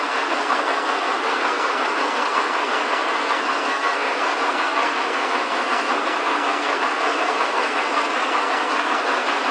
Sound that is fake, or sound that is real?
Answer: fake